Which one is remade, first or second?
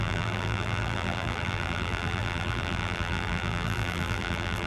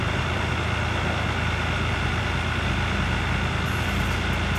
first